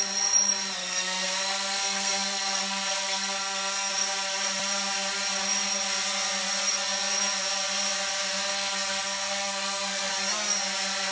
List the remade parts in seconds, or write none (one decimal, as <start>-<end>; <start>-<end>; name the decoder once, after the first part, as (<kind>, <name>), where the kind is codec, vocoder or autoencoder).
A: 0.8-3.9 (codec, SNAC); 8.5-10.1